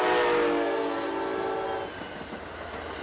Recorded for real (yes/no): yes